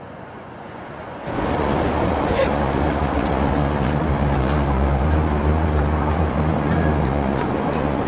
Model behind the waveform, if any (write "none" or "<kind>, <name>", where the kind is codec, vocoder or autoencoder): vocoder, Vocos